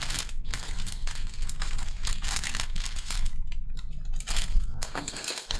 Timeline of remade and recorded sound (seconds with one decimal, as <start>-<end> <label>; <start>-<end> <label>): 0.0-3.3 remade; 3.3-4.3 recorded; 4.3-5.6 remade